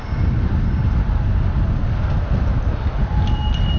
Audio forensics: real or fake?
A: real